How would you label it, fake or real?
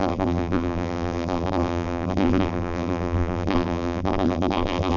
fake